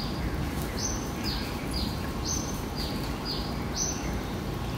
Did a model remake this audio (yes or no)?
yes